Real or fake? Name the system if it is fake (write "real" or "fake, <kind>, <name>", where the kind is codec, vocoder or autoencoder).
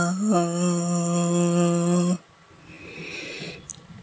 real